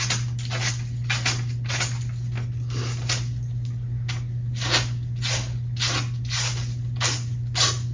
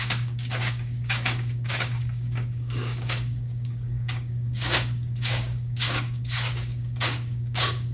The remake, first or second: second